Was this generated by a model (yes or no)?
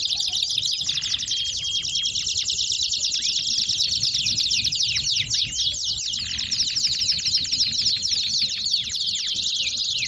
no